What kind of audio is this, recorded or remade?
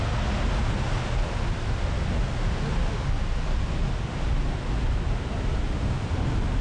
recorded